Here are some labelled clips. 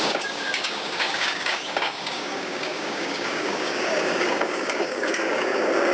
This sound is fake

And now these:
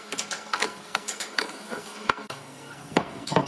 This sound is fake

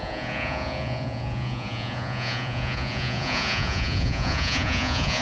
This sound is fake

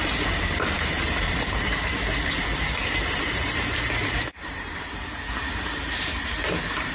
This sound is fake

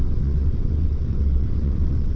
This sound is fake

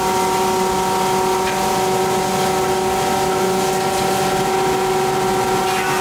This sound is real